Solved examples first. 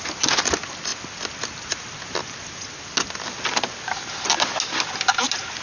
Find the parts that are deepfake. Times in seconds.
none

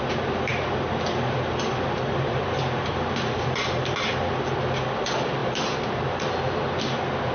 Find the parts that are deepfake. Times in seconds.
0.5-4.3 (vocoder, BigVGAN v2)

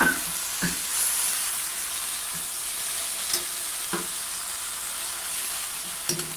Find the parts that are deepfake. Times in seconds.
none

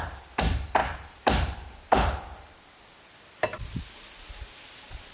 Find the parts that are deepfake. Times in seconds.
0.8-2.6 (vocoder, BigVGAN v2)

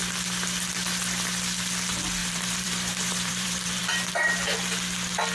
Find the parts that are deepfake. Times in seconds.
2.2-3.8 (vocoder, BigVGAN v2)

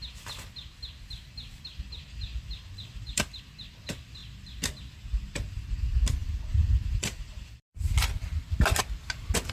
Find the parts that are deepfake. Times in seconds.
2.3-3.4 (vocoder, BigVGAN v2); 6.2-8.8

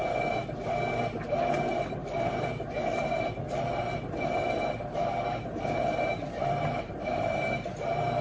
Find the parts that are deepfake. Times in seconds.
0.0-8.2 (vocoder, BigVGAN v2)